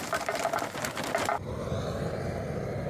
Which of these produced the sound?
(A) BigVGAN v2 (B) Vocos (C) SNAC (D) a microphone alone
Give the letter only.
D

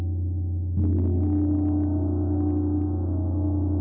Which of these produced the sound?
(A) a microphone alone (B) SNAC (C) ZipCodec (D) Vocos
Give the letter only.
A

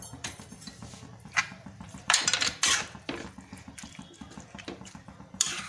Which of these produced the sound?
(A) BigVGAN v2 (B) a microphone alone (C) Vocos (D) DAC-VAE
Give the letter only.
A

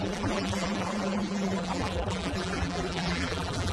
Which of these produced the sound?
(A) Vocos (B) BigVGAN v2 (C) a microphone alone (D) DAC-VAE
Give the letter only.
B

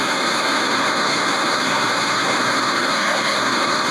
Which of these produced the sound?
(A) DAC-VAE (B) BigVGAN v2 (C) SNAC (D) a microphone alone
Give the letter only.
C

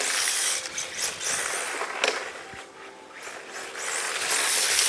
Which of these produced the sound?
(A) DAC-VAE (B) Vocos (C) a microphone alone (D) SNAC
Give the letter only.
C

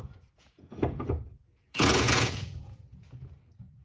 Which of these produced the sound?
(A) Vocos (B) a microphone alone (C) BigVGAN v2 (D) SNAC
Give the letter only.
A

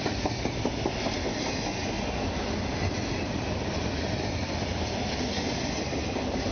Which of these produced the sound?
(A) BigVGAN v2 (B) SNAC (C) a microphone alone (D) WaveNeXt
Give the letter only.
C